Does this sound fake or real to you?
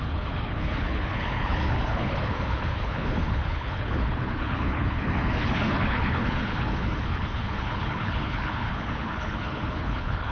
fake